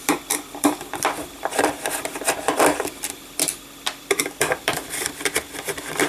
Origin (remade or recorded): remade